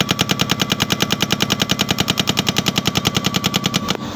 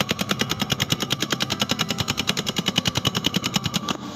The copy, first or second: second